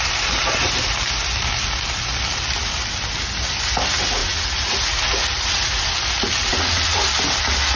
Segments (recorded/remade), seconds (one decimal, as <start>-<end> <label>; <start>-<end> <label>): 0.0-4.2 recorded; 4.2-5.8 remade; 5.8-6.5 recorded; 6.5-7.1 remade; 7.1-7.8 recorded